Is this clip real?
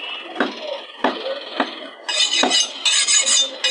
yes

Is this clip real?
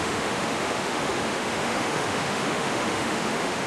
no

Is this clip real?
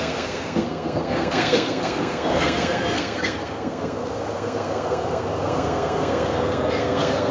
no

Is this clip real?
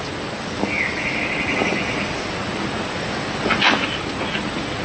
yes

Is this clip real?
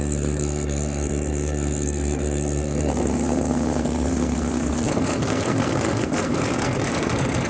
no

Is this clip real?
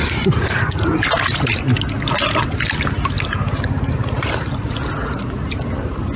yes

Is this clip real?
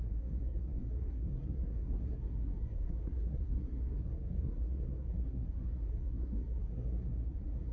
no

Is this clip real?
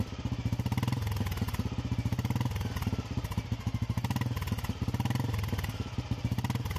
yes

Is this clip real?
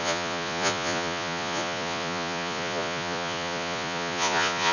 no